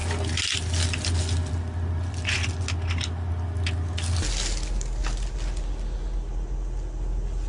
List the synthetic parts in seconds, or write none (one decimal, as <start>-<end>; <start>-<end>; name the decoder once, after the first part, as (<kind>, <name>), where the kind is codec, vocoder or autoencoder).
none